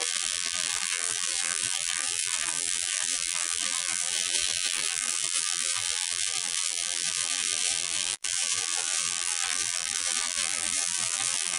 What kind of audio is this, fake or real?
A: fake